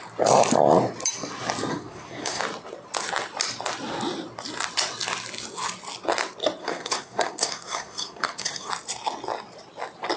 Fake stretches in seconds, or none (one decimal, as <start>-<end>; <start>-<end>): 1.7-2.4; 6.6-8.7